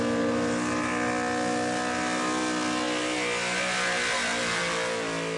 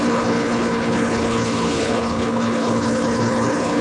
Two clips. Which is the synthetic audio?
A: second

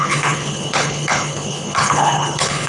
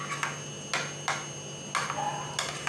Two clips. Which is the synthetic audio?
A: first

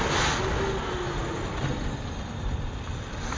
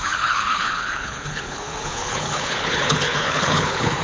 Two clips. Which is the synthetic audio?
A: second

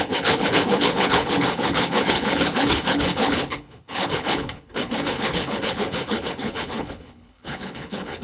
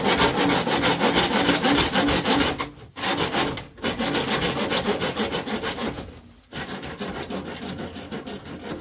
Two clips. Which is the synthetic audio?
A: first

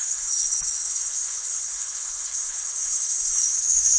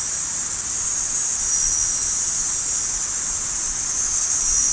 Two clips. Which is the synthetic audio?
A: first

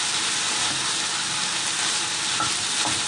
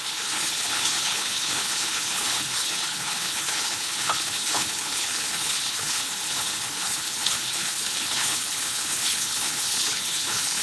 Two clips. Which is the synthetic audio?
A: second